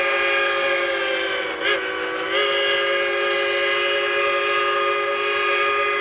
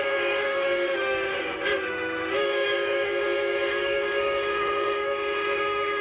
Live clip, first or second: first